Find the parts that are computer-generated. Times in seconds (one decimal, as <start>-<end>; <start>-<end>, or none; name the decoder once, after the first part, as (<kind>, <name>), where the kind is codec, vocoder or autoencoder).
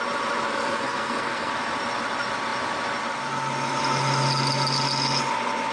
0.5-1.5 (codec, SNAC)